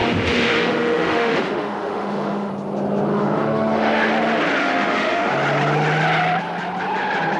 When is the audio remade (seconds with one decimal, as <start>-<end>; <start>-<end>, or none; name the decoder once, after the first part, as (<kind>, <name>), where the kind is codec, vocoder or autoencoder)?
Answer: 0.0-2.5 (autoencoder, DAC-VAE); 3.1-4.1; 4.6-5.3